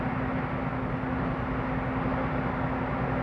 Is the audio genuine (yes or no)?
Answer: yes